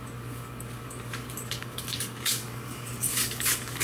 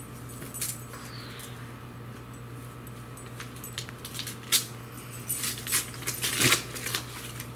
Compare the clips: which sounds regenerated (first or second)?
first